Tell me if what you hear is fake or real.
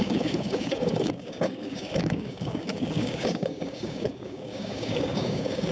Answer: fake